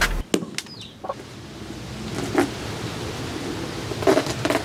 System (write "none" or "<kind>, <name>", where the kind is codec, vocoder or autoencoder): none